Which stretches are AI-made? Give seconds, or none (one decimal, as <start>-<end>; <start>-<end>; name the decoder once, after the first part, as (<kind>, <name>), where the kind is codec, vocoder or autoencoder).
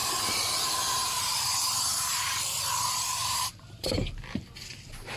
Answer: 0.0-2.4 (vocoder, BigVGAN v2); 3.2-4.0